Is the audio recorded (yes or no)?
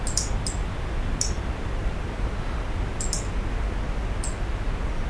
yes